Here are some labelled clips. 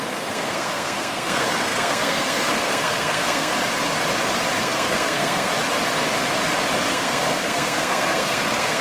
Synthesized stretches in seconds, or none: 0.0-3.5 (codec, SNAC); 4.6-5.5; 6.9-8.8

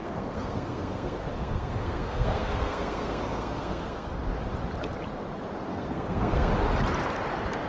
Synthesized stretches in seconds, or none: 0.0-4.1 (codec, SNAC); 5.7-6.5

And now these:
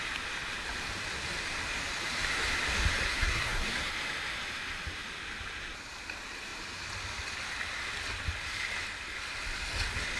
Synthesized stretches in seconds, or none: 3.1-3.9 (codec, SNAC)